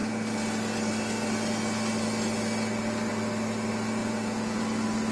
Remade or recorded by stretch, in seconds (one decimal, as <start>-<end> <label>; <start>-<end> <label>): 0.0-4.0 recorded; 4.0-4.6 remade; 4.6-5.1 recorded